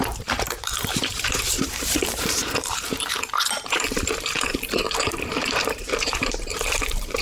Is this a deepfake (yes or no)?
yes